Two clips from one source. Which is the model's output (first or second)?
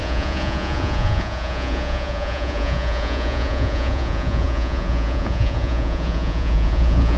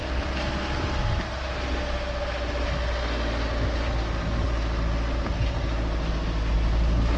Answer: first